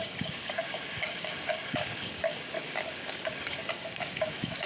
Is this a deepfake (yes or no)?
yes